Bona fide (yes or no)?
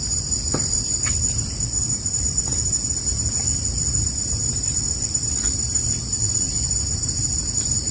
yes